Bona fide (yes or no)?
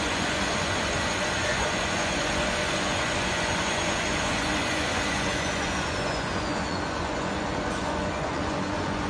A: no